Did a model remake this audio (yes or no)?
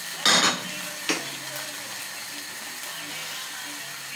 no